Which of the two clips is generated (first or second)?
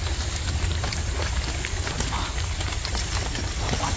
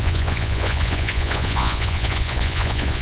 second